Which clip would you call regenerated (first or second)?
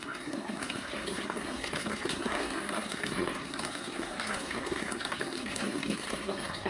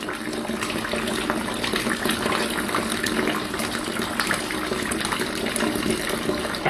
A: first